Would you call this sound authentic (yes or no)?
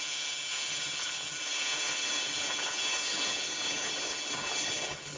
no